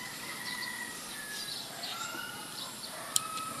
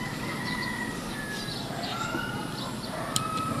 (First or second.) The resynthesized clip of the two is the first